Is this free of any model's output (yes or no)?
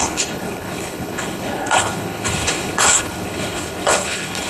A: no